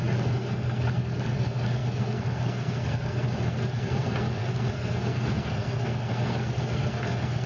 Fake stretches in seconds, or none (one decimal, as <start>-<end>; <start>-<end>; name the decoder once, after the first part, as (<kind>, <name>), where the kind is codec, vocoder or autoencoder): 0.0-7.5 (codec, SNAC)